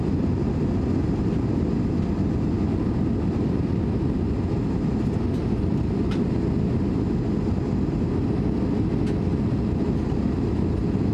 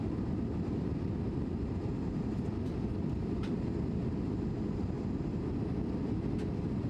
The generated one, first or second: second